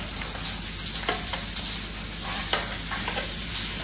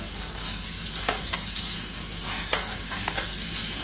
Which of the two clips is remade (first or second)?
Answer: second